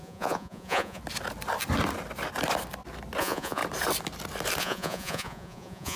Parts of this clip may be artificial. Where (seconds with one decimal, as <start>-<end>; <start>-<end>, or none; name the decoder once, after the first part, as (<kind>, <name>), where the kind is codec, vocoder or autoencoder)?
0.0-1.0 (vocoder, Vocos); 3.2-3.6; 4.6-6.0